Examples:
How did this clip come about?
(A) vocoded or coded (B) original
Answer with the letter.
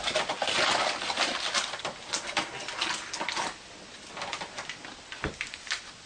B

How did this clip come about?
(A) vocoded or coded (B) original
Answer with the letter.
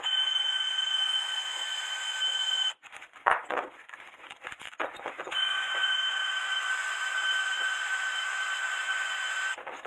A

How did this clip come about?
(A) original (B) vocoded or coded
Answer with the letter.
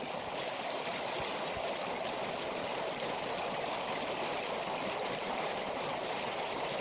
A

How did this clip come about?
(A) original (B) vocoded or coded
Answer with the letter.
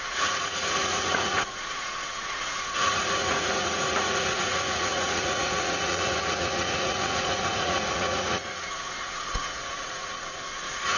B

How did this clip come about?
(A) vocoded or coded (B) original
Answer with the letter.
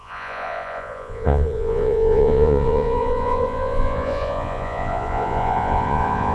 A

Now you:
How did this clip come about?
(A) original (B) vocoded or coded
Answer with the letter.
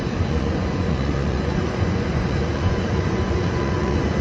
B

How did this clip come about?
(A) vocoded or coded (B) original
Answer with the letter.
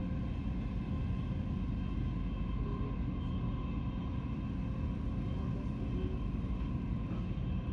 B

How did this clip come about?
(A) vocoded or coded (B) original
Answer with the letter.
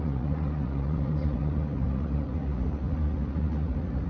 A